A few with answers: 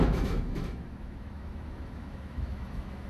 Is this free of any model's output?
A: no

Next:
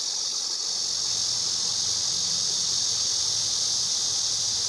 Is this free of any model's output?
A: yes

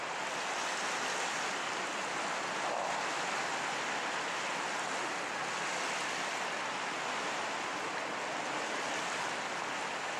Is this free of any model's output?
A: yes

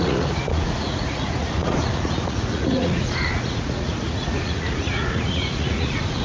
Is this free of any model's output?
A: no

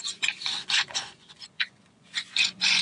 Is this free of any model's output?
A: no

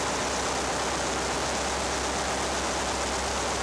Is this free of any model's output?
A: yes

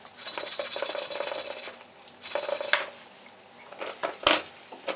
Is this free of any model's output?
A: yes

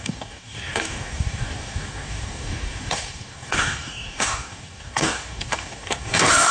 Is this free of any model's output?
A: no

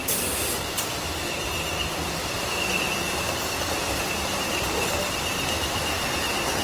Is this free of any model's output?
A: yes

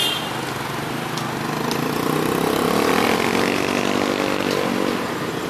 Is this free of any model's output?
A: yes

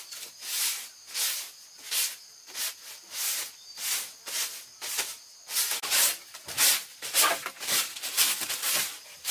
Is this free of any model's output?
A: yes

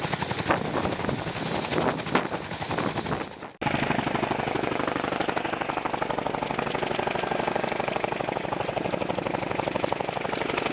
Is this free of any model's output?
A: yes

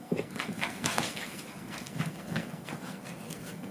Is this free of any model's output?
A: no